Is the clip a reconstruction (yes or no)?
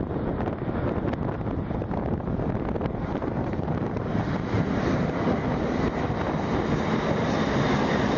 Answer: no